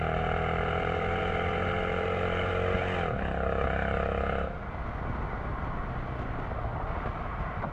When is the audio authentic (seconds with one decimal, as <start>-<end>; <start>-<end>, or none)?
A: 2.5-7.1